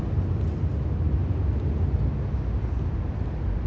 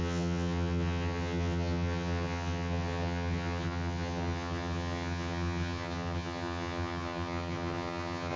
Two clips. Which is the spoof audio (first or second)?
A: second